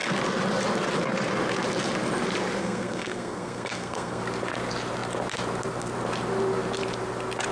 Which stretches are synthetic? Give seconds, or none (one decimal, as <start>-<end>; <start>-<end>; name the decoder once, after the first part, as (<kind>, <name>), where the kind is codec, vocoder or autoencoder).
2.6-4.2 (codec, SNAC)